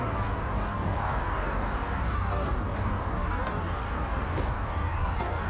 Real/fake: fake